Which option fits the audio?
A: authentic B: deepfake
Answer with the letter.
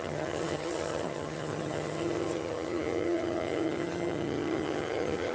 B